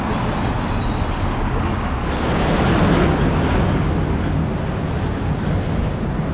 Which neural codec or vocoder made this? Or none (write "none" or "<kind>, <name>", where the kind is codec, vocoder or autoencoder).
none